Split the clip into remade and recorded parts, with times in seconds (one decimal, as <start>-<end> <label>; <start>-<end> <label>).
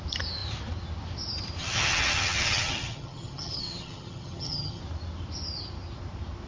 0.0-1.6 recorded; 1.6-4.8 remade; 4.8-6.5 recorded